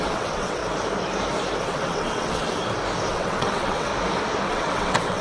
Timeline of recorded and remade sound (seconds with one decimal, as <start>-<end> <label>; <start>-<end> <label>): 0.0-0.6 remade; 0.6-1.6 recorded; 1.6-2.6 remade; 2.6-3.1 recorded; 3.1-3.9 remade; 3.9-4.5 recorded; 4.5-5.2 remade